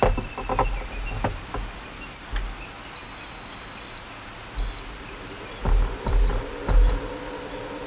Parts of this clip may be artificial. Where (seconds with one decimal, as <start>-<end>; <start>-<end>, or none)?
none